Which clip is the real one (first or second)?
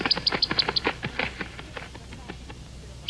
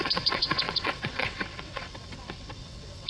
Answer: first